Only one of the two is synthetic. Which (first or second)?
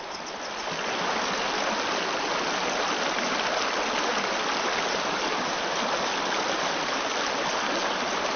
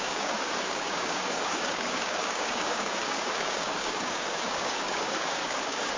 second